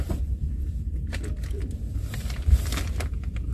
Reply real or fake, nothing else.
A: real